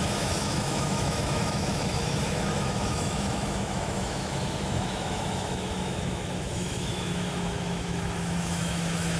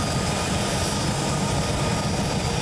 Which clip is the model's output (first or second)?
first